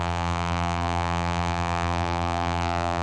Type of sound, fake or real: fake